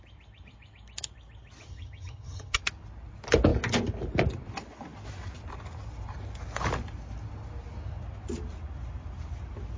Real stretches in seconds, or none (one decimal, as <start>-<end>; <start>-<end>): 0.0-1.7; 2.6-9.8